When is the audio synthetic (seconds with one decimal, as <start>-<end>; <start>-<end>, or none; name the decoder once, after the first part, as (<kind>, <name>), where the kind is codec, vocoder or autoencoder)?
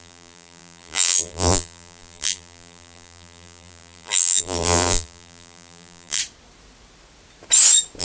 0.0-6.2 (vocoder, BigVGAN v2)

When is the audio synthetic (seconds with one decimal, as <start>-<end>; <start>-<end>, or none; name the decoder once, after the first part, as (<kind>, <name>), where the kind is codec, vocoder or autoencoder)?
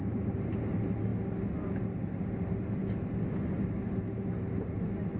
none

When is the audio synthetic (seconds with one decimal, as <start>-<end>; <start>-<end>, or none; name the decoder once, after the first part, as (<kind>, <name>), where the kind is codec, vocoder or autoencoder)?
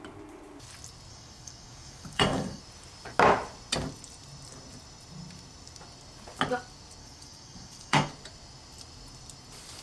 1.1-2.6 (codec, DAC); 7.0-8.1